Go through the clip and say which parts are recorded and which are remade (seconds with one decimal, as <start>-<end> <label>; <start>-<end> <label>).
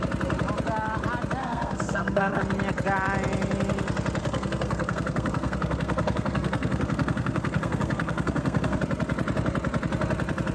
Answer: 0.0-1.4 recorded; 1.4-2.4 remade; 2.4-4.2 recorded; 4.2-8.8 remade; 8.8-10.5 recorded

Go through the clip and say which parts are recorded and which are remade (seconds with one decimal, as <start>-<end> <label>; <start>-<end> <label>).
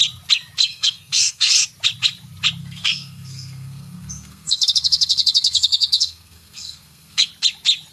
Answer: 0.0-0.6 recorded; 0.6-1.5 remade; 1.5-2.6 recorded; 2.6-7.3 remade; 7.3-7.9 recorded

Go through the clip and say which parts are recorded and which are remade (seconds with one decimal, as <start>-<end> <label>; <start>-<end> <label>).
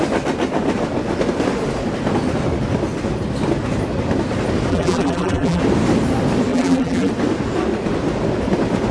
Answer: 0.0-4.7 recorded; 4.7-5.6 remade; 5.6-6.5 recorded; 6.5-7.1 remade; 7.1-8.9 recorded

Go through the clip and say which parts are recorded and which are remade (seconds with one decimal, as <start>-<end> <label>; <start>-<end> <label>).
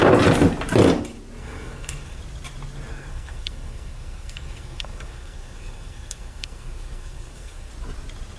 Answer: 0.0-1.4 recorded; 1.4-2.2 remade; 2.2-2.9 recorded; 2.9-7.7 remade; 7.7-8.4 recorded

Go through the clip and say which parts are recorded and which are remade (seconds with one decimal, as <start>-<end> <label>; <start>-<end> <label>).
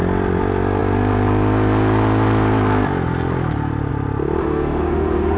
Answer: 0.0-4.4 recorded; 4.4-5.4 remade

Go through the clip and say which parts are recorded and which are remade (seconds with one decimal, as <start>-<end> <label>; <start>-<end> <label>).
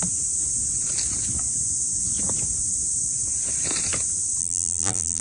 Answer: 0.0-4.4 recorded; 4.4-5.2 remade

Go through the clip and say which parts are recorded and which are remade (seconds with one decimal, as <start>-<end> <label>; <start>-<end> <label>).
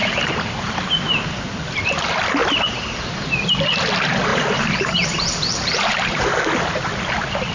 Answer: 0.0-0.9 remade; 0.9-4.3 recorded; 4.3-7.0 remade; 7.0-7.5 recorded